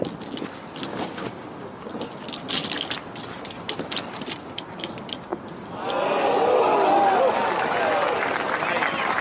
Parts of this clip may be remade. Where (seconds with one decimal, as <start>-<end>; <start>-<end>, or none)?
0.9-1.9